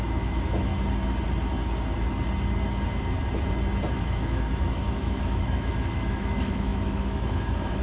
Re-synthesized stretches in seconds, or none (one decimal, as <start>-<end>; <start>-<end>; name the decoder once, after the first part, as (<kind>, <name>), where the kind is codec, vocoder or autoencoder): 0.0-0.7 (autoencoder, DAC-VAE); 3.9-7.8